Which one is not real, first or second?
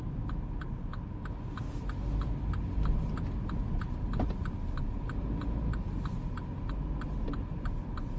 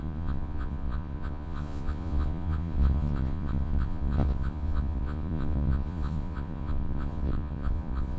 second